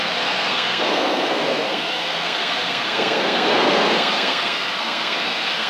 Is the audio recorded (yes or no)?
no